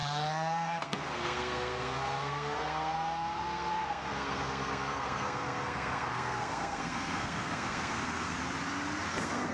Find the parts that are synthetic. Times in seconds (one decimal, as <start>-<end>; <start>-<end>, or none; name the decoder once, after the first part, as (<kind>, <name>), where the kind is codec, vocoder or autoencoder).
0.0-8.4 (codec, SNAC); 9.1-9.5